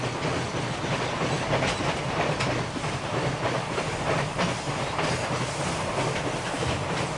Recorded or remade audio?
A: recorded